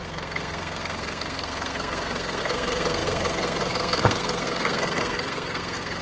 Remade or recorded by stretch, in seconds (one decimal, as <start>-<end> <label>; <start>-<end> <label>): 0.0-6.0 remade